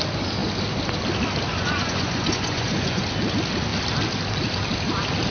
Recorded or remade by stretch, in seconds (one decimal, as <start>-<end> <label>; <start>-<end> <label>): 0.0-1.5 recorded; 1.5-3.0 remade; 3.0-5.3 recorded